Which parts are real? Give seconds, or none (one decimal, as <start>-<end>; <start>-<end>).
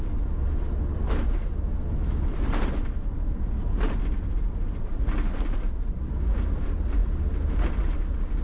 0.0-8.4